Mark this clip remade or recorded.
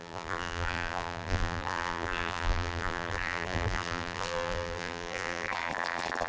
remade